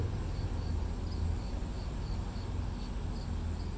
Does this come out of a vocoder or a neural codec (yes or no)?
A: no